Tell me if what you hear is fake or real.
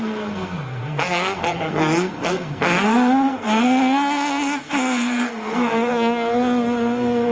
fake